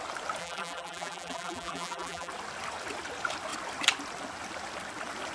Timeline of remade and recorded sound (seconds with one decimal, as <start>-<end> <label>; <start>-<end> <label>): 0.0-0.4 recorded; 0.4-2.3 remade; 2.3-5.3 recorded